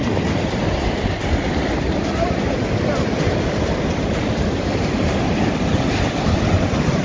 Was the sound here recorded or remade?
recorded